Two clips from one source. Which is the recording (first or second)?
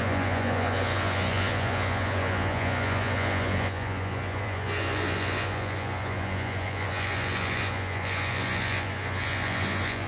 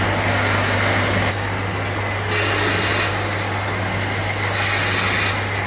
second